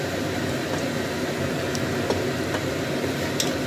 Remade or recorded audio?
recorded